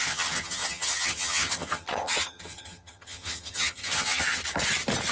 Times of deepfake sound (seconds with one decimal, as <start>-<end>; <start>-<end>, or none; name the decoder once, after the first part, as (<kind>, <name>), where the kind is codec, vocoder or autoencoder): 0.0-4.4 (vocoder, HiFi-GAN)